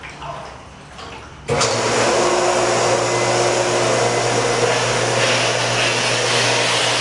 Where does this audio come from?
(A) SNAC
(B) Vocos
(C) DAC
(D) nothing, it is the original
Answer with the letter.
D